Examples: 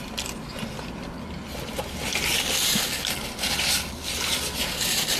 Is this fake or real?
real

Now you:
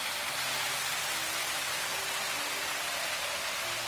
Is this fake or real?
real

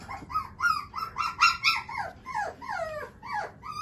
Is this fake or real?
real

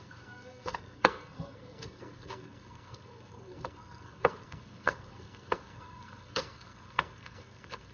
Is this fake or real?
fake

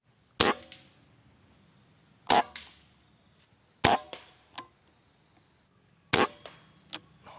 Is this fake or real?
real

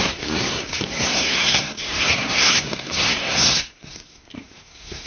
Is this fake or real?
fake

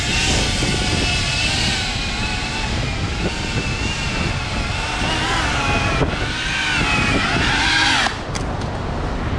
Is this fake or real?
real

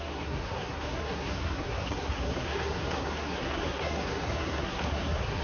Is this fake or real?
fake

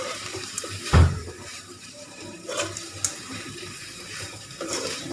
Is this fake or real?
fake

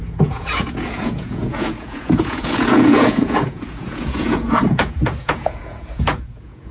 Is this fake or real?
fake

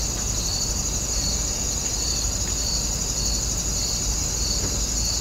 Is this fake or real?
real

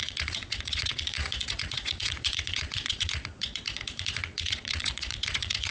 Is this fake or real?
fake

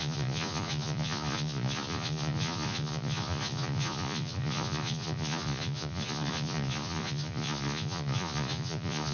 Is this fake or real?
fake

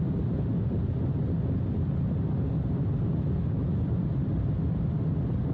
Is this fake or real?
real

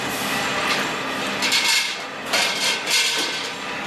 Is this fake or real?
real